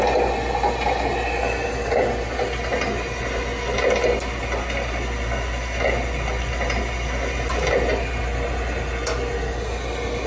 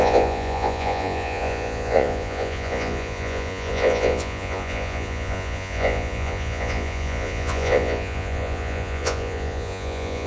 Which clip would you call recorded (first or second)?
first